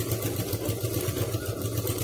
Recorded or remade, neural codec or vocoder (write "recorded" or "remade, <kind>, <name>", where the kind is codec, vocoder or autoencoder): recorded